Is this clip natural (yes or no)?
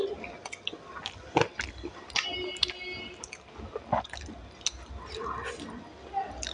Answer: yes